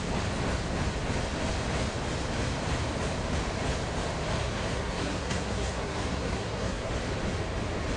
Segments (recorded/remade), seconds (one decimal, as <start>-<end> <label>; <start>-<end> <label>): 0.0-4.4 recorded; 4.4-6.9 remade; 6.9-8.0 recorded